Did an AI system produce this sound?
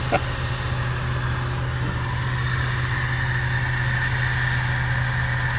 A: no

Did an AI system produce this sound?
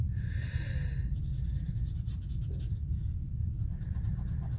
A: no